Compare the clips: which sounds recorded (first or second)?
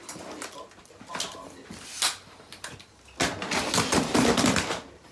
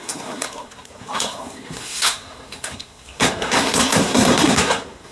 first